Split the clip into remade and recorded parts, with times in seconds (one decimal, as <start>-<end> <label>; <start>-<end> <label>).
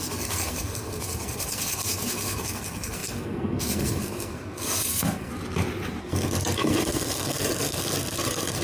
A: 0.0-5.3 remade; 5.3-6.0 recorded; 6.0-8.6 remade